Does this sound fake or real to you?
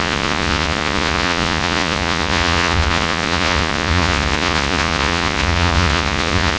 fake